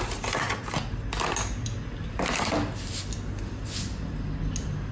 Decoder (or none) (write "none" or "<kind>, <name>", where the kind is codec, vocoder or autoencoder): none